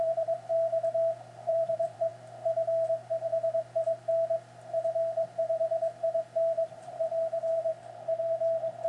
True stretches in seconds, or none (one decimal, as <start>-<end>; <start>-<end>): 0.5-1.5; 2.1-6.7